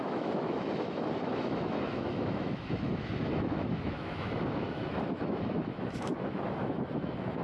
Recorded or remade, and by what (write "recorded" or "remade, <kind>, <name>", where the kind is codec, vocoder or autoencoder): remade, autoencoder, DAC-VAE